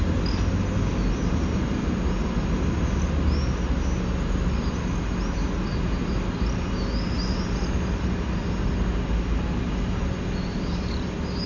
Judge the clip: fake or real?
real